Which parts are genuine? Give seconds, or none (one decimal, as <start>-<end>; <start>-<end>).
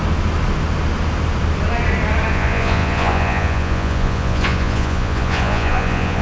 0.0-2.3